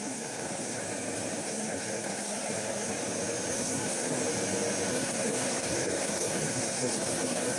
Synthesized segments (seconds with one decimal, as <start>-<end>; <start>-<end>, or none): 0.0-0.8; 1.4-2.9; 3.5-4.2; 4.9-7.6